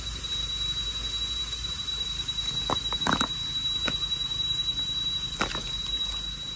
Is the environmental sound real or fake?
real